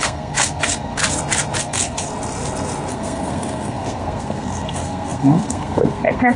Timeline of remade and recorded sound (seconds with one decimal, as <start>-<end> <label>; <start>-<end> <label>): 0.0-1.0 remade; 1.0-1.6 recorded; 1.6-2.1 remade; 2.1-2.9 recorded; 2.9-6.4 remade